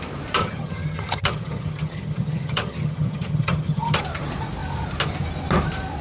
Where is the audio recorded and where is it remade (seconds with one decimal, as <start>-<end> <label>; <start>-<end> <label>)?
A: 0.0-0.4 recorded; 0.4-4.0 remade; 4.0-6.0 recorded